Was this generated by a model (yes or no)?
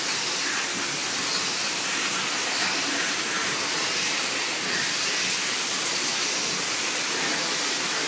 no